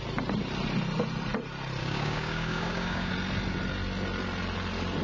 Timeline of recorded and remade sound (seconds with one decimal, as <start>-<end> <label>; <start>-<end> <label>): 0.0-1.8 recorded; 1.8-3.1 remade; 3.1-5.0 recorded